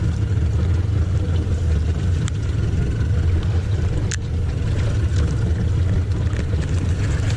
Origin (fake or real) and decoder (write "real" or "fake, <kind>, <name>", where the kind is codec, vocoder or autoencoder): real